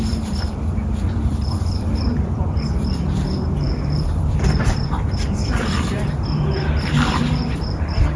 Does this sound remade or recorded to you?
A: remade